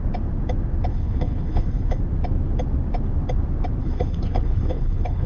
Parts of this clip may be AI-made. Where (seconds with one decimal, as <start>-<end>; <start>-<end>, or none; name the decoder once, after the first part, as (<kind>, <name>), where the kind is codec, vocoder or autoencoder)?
0.9-2.0 (codec, HILCodec); 3.8-5.3